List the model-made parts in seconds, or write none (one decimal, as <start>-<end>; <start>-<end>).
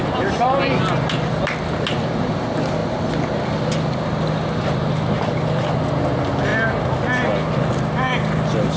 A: none